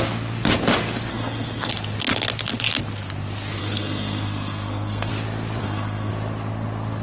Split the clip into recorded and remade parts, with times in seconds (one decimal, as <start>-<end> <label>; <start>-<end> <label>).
0.0-1.1 recorded; 1.1-1.7 remade; 1.7-3.6 recorded; 3.6-5.1 remade; 5.1-5.6 recorded; 5.6-6.1 remade; 6.1-7.0 recorded